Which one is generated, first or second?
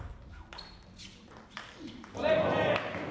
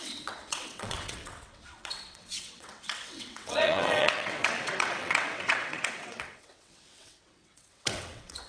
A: second